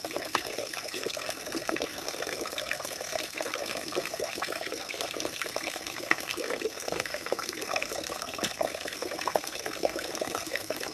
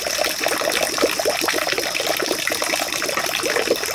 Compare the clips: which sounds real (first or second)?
second